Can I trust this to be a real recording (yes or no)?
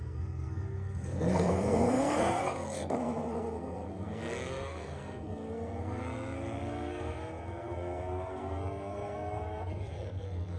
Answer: no